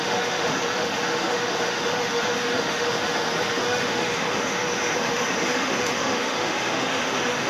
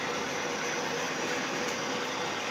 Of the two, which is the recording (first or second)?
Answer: second